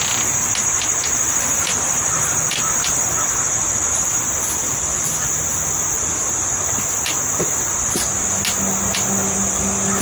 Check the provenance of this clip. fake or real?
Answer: real